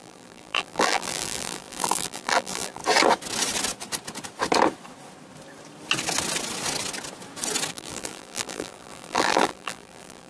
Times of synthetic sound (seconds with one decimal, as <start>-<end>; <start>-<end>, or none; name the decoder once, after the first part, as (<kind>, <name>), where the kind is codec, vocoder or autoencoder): 0.0-2.8 (vocoder, BigVGAN v2); 7.7-10.3